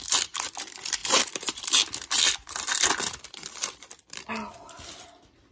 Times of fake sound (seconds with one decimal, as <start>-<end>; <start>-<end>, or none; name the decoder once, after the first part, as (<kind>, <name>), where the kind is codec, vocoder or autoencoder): 1.0-4.3 (vocoder, BigVGAN v2)